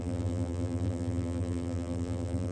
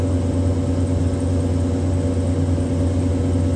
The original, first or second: second